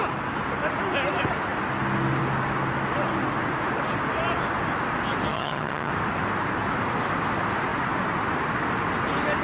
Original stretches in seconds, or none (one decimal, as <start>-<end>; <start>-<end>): 0.0-5.3; 5.9-9.4